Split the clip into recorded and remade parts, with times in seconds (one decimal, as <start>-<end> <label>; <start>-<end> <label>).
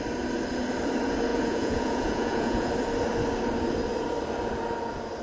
0.0-1.3 recorded; 1.3-2.7 remade; 2.7-5.2 recorded